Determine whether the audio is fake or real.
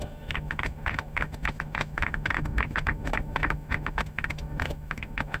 fake